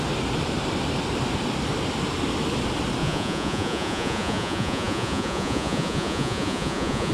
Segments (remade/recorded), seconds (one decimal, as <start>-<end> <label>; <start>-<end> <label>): 0.0-3.0 recorded; 3.0-7.1 remade